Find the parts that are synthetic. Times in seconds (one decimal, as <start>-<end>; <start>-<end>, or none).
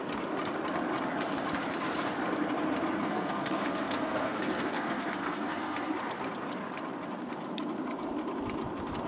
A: 3.0-5.9